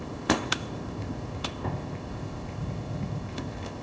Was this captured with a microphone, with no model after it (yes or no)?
no